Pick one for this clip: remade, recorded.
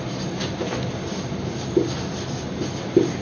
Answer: recorded